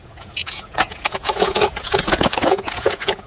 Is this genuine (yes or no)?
no